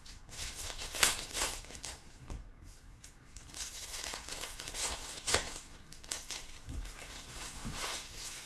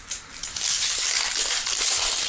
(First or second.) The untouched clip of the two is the second